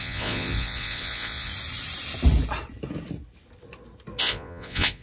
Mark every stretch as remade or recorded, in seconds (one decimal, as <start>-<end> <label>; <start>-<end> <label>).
0.0-1.5 remade; 1.5-4.2 recorded; 4.2-5.0 remade